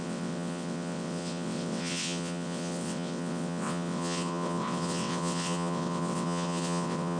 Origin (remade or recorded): remade